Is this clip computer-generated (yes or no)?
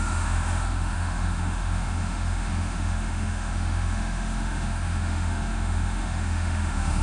yes